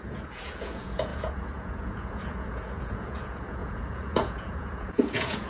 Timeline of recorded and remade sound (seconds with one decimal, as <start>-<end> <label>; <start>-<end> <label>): 0.0-5.5 remade